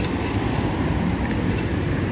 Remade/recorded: recorded